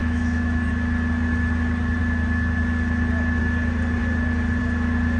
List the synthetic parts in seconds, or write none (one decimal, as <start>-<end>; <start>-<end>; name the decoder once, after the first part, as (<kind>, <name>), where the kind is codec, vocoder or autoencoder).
0.0-0.7 (autoencoder, DAC-VAE)